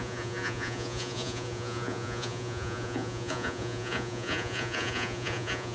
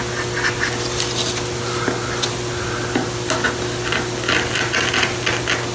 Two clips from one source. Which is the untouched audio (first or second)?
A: second